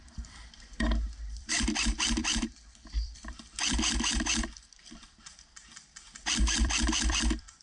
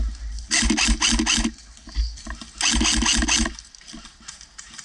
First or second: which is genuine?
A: second